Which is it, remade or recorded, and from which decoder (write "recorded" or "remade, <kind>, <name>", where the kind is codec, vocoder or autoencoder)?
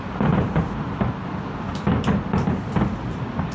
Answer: recorded